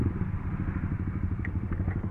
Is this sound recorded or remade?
remade